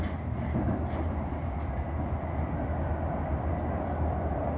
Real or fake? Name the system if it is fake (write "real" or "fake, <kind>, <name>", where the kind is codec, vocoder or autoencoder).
real